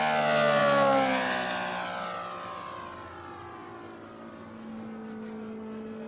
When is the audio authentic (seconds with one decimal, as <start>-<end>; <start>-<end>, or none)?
0.0-6.1